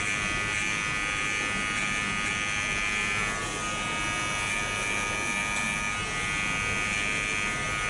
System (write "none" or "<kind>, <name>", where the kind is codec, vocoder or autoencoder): none